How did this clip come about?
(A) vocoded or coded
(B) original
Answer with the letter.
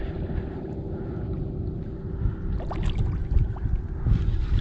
B